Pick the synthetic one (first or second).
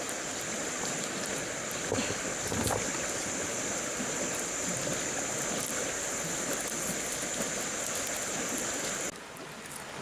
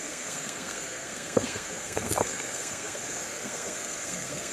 second